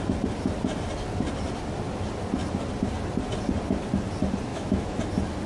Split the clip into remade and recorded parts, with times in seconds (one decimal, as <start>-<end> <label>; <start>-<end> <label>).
0.0-4.5 recorded; 4.5-5.0 remade; 5.0-5.5 recorded